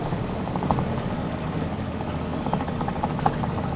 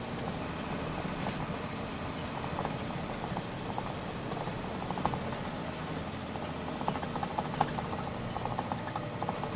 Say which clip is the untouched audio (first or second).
second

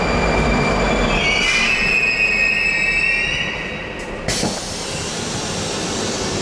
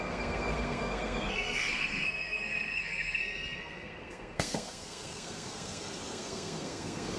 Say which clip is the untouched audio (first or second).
first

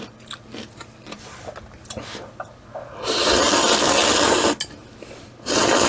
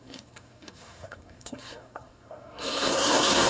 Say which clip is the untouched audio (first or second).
first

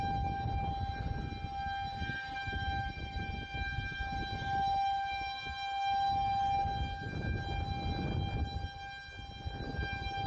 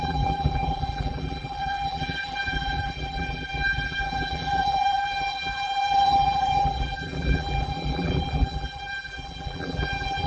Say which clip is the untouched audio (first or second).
first